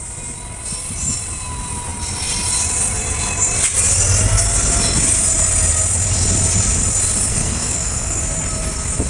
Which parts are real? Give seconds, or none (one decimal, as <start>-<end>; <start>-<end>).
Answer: 0.0-7.3; 8.2-9.1